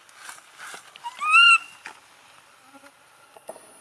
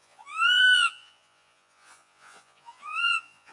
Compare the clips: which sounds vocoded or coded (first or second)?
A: second